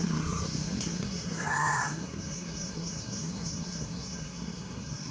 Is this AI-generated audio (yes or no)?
yes